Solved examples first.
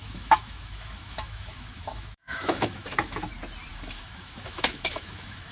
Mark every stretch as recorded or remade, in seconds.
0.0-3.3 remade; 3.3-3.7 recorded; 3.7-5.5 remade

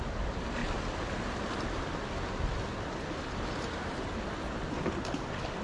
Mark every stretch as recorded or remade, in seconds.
0.0-5.6 recorded

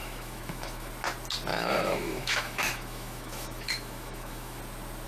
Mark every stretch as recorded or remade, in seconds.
0.0-0.9 remade; 0.9-1.5 recorded; 1.5-4.6 remade; 4.6-5.1 recorded

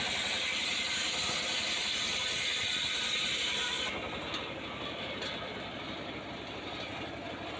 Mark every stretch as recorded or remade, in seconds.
0.0-7.6 recorded